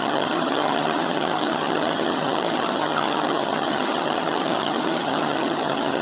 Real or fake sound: fake